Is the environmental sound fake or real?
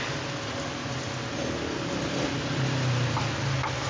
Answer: real